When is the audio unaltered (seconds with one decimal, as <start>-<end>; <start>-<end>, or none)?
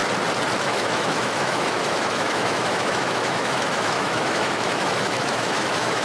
0.0-0.6